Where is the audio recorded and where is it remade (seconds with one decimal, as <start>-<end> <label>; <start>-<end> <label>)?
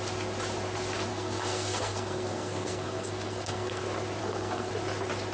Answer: 0.0-1.1 recorded; 1.1-3.8 remade; 3.8-4.2 recorded; 4.2-4.7 remade; 4.7-5.3 recorded